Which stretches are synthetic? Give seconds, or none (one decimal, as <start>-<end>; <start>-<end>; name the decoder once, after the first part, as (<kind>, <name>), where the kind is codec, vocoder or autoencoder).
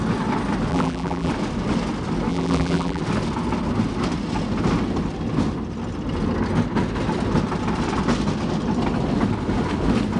0.7-1.3 (vocoder, BigVGAN v2); 2.3-3.0